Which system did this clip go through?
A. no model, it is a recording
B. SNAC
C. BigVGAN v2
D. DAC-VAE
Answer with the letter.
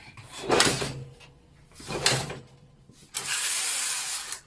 C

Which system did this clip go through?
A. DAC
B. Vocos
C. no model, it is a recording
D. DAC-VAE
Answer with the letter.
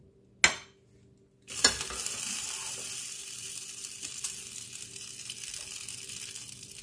C